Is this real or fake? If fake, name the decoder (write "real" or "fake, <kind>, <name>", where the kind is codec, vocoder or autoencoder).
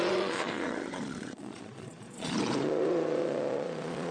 fake, vocoder, Vocos